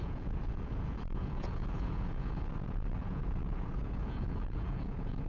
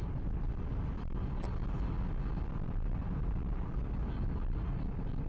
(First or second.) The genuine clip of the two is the second